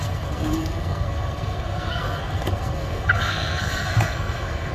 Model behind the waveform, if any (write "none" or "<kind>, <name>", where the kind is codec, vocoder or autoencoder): codec, SNAC